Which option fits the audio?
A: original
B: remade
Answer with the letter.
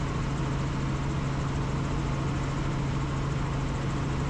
A